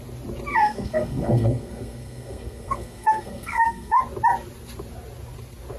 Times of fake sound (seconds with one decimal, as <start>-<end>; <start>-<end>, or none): 0.5-4.0